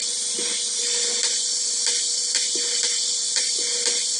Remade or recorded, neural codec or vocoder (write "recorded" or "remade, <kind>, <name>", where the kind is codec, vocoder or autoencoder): recorded